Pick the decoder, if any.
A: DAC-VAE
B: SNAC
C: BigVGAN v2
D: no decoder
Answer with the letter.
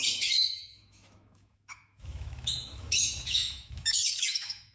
A